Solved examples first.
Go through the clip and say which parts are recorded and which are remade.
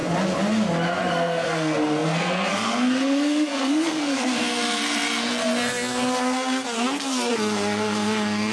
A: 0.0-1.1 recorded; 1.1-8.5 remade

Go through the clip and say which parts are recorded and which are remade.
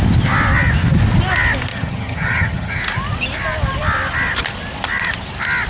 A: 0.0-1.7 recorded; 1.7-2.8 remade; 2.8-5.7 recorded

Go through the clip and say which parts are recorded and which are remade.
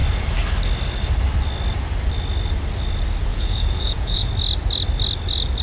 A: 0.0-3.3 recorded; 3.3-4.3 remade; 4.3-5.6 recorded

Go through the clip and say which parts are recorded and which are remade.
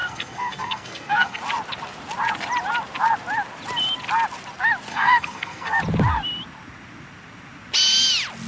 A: 0.0-1.4 remade; 1.4-4.9 recorded; 4.9-5.8 remade; 5.8-8.5 recorded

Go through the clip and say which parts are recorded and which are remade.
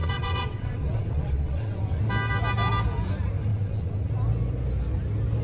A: 0.0-2.0 remade; 2.0-3.5 recorded; 3.5-4.1 remade; 4.1-5.4 recorded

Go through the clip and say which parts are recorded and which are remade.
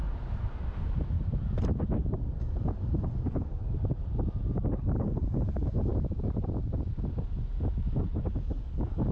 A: 0.0-2.4 recorded; 2.4-3.6 remade; 3.6-4.7 recorded; 4.7-5.9 remade; 5.9-8.3 recorded; 8.3-9.1 remade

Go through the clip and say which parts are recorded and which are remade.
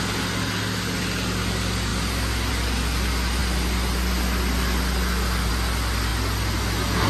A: 0.0-7.1 recorded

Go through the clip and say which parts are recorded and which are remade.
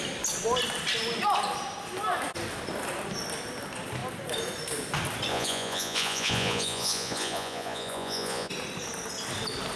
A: 0.0-5.3 recorded; 5.3-8.5 remade; 8.5-9.8 recorded